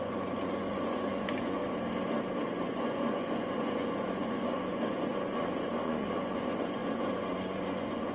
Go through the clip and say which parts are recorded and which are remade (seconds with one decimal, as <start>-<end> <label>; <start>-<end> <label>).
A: 0.0-1.6 remade; 1.6-2.5 recorded; 2.5-8.1 remade